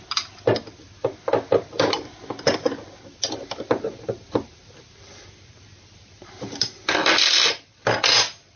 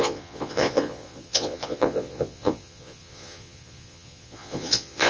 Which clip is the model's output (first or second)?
second